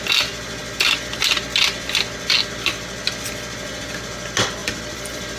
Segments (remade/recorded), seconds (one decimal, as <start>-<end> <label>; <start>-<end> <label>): 0.0-4.6 recorded; 4.6-5.4 remade